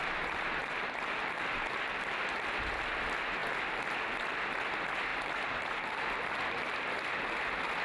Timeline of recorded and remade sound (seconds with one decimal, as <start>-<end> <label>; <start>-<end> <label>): 0.0-0.6 recorded; 0.6-2.6 remade; 2.6-5.1 recorded; 5.1-7.1 remade; 7.1-7.8 recorded